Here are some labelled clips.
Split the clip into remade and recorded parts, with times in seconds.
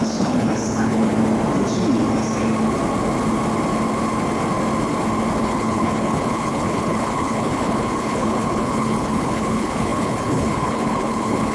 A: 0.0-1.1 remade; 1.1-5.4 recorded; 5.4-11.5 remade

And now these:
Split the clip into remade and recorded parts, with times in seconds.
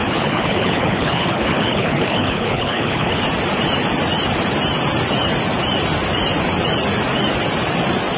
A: 0.0-3.2 remade; 3.2-8.2 recorded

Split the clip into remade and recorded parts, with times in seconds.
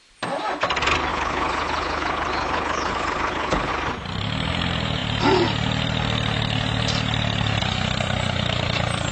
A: 0.0-1.1 recorded; 1.1-3.7 remade; 3.7-9.1 recorded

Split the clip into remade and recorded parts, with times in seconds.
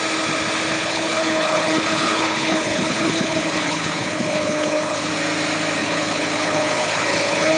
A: 0.0-0.8 recorded; 0.8-5.1 remade; 5.1-5.8 recorded; 5.8-7.6 remade